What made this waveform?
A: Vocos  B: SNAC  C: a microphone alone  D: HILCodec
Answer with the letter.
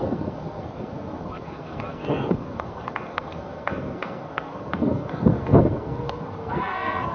B